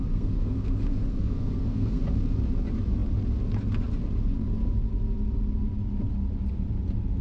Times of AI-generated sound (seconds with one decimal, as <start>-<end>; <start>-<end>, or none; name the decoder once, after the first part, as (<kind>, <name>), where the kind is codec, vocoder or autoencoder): 0.0-2.0 (codec, SNAC)